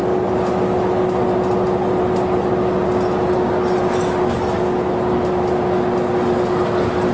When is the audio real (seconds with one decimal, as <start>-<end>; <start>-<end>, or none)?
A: 0.0-7.1